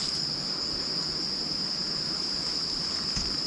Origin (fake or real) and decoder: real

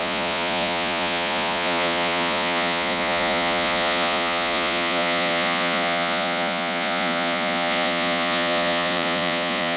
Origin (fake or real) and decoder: fake, vocoder, Vocos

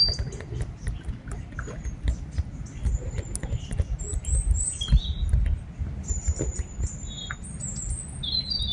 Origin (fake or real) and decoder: real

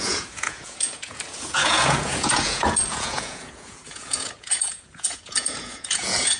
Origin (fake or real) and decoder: fake, vocoder, Vocos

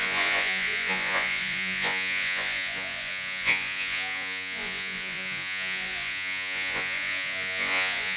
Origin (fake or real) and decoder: fake, vocoder, Vocos